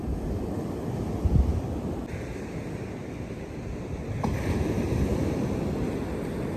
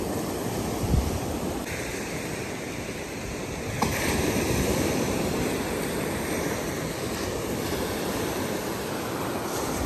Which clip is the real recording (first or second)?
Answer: first